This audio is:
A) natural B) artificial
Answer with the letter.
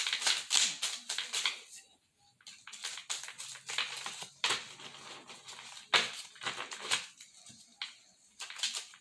A